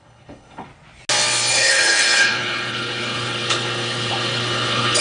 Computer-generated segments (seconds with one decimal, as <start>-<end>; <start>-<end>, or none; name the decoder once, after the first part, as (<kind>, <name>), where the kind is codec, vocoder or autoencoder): 0.0-0.7 (codec, HILCodec); 1.5-5.0